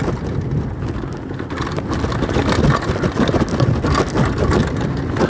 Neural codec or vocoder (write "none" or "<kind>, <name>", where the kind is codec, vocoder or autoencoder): none